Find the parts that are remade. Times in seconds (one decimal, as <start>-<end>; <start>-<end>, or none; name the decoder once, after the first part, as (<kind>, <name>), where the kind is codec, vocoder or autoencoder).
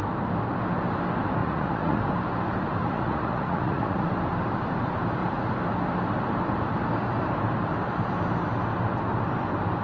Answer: 1.4-2.0 (vocoder, Vocos); 2.8-4.1